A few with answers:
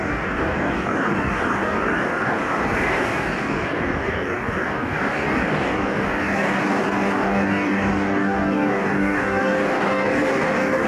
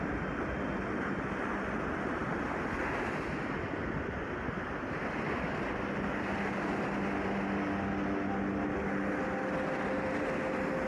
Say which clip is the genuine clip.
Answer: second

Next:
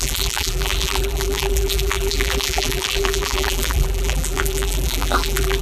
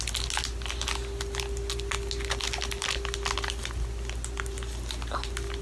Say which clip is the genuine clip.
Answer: second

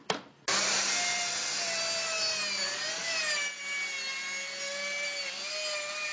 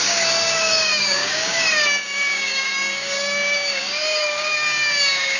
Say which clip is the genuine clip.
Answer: first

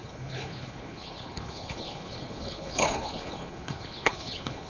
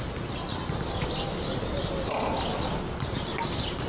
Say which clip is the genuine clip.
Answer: second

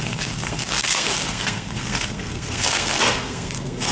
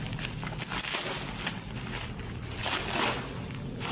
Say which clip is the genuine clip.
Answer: second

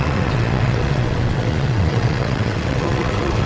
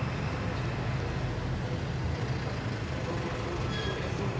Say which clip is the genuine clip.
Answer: second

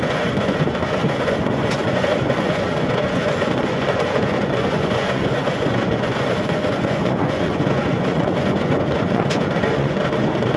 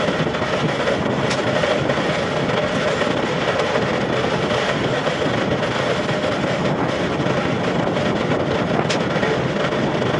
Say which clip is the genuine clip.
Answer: second